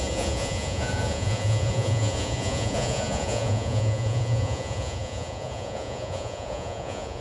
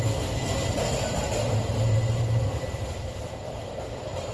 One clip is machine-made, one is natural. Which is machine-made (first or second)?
first